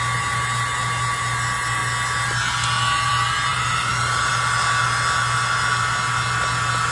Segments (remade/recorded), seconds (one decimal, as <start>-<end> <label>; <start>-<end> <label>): 0.0-3.5 recorded; 3.5-4.3 remade; 4.3-6.9 recorded